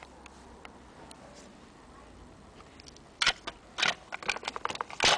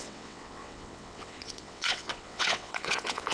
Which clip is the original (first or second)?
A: first